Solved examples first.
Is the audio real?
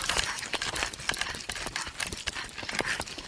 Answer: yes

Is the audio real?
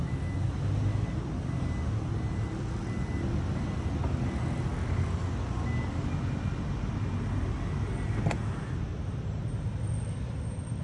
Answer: yes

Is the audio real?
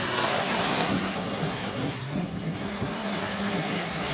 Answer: no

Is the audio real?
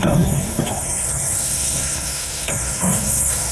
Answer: no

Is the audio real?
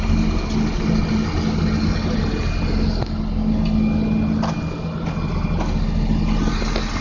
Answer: yes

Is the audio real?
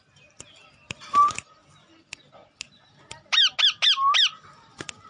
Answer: yes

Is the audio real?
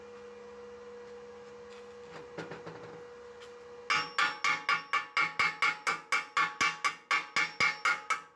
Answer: yes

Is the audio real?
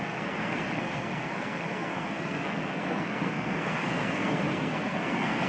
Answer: no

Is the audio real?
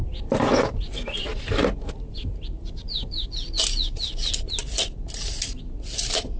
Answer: yes